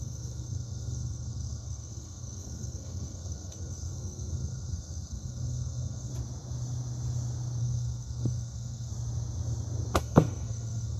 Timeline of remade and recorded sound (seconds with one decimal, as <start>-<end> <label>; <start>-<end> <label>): 0.0-6.1 remade; 6.1-7.6 recorded; 7.6-8.9 remade; 8.9-10.0 recorded; 10.0-11.0 remade